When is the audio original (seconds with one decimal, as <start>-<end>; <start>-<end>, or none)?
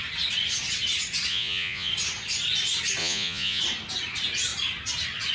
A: 0.0-1.3; 1.9-3.0; 3.6-5.3